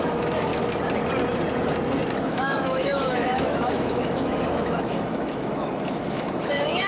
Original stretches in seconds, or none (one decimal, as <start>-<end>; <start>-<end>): 0.5-2.2